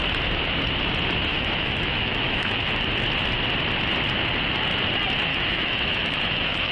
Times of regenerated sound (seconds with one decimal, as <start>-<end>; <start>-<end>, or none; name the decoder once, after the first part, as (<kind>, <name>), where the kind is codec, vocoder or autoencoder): 1.3-2.7 (autoencoder, DAC-VAE); 5.3-6.7